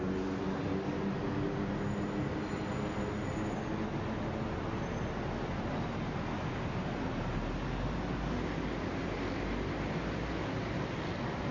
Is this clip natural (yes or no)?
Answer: yes